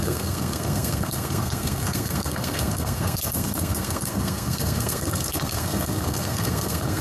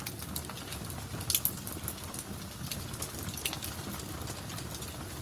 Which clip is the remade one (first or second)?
first